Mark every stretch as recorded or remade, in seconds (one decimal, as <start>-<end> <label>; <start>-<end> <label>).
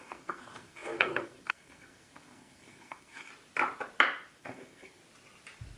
0.0-3.3 remade; 3.3-4.4 recorded; 4.4-5.0 remade; 5.0-5.8 recorded